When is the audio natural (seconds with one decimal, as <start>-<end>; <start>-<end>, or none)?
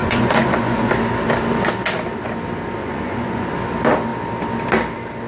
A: 0.9-2.8; 3.5-5.3